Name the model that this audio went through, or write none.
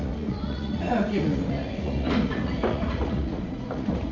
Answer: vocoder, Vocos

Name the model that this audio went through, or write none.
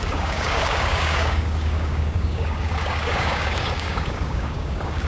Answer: codec, DAC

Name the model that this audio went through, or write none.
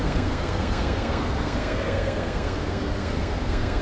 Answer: codec, SNAC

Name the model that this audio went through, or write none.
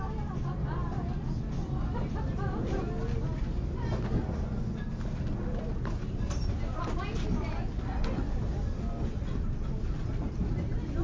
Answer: none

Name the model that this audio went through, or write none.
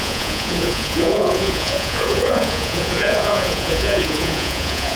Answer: vocoder, Vocos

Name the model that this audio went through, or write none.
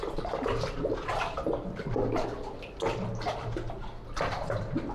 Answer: none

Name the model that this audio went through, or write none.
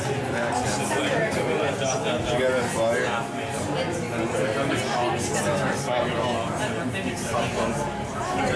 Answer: none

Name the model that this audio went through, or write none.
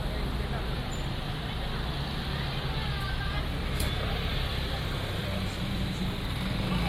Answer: none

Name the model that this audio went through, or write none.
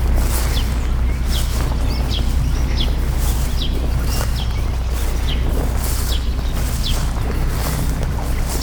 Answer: none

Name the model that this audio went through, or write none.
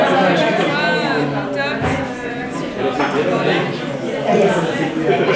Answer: none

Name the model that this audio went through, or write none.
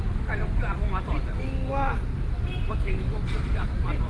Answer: none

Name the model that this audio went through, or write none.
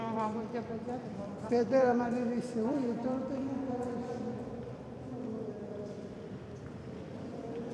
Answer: vocoder, BigVGAN v2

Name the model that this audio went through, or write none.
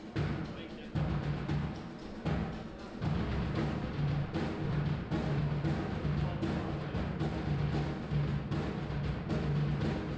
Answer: none